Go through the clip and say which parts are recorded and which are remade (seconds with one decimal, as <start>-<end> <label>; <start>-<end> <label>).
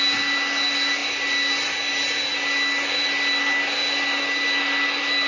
0.0-5.3 recorded